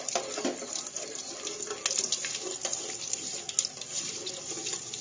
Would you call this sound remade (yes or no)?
no